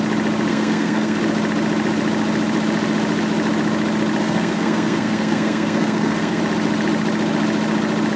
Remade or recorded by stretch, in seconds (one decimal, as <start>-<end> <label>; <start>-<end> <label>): 0.0-0.5 recorded; 0.5-1.2 remade; 1.2-4.2 recorded; 4.2-6.4 remade; 6.4-8.2 recorded